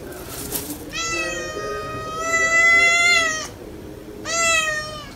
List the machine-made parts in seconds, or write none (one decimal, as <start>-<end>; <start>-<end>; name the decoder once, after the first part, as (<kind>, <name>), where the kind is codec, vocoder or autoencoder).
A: 0.0-0.8 (vocoder, BigVGAN v2); 1.7-2.4